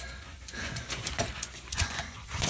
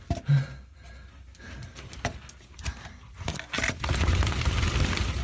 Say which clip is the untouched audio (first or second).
second